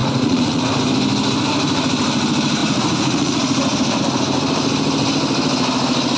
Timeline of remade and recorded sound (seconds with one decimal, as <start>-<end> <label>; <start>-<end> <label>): 0.0-0.7 remade; 0.7-2.6 recorded; 2.6-4.0 remade; 4.0-6.2 recorded